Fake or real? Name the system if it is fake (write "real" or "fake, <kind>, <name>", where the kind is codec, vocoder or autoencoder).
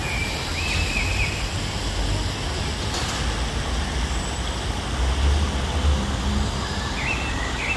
real